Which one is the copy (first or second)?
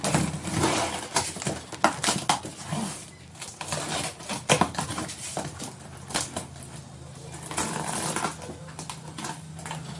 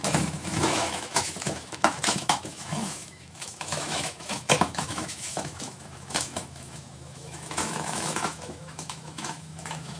second